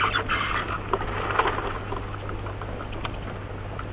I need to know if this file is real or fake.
real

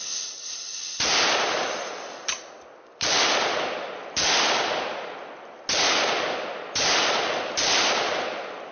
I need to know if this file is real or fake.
real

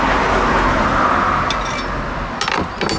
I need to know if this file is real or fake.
real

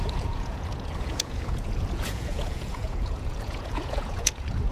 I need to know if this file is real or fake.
fake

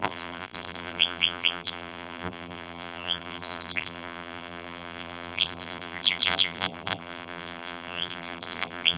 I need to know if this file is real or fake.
fake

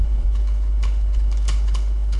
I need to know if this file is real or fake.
fake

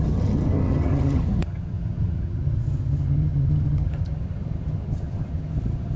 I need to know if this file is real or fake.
fake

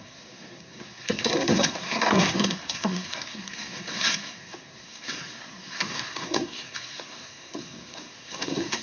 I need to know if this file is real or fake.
fake